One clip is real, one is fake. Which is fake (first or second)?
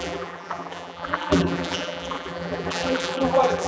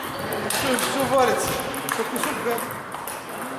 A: first